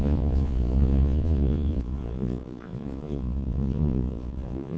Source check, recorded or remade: remade